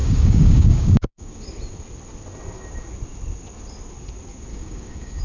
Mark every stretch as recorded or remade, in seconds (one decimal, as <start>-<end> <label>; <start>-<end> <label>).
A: 0.0-1.4 remade; 1.4-4.5 recorded; 4.5-5.2 remade

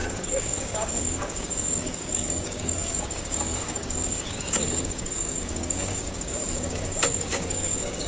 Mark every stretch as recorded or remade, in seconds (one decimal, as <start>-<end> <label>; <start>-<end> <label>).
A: 0.0-8.1 remade

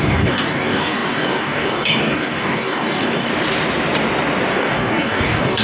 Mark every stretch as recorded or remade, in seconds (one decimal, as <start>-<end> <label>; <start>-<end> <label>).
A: 0.0-3.3 remade; 3.3-4.5 recorded; 4.5-5.6 remade

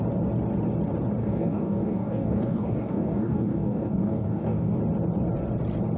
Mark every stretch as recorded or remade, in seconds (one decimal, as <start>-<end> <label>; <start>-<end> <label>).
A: 0.0-1.2 recorded; 1.2-4.8 remade; 4.8-6.0 recorded

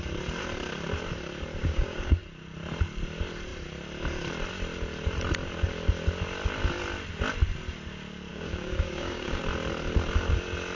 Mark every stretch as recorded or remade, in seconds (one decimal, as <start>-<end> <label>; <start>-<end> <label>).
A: 0.0-1.6 recorded; 1.6-2.2 remade; 2.2-8.3 recorded; 8.3-9.4 remade; 9.4-10.7 recorded

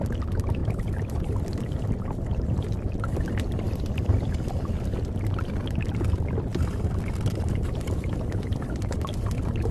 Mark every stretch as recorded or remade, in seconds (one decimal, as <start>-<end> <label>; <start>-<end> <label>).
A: 0.0-9.7 recorded